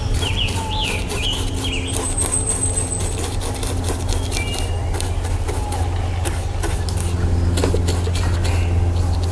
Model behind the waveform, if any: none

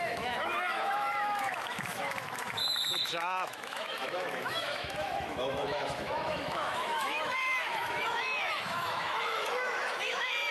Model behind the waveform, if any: autoencoder, DAC-VAE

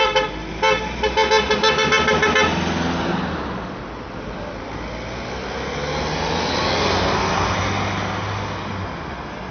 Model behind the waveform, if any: none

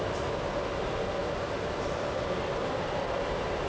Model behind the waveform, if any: none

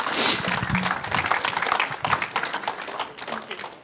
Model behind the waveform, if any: none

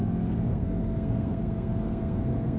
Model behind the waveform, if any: codec, SNAC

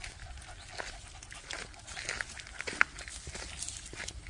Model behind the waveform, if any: none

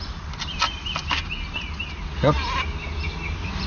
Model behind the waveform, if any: none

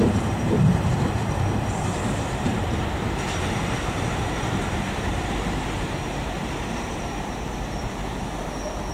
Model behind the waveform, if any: vocoder, BigVGAN v2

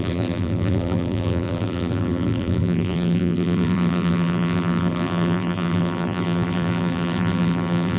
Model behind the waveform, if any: vocoder, BigVGAN v2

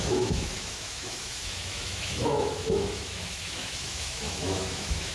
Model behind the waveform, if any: autoencoder, DAC-VAE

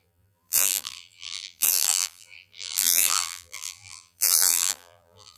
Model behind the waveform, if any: vocoder, BigVGAN v2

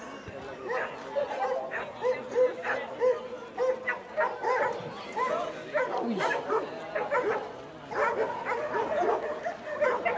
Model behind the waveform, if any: none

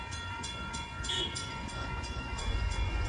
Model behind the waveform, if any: vocoder, Vocos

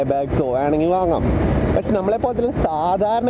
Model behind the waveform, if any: none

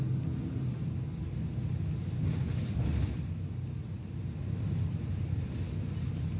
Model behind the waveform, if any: none